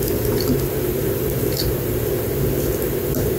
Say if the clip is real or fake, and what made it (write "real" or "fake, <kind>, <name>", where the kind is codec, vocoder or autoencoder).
real